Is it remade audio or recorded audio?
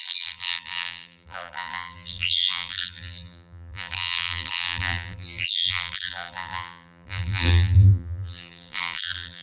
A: remade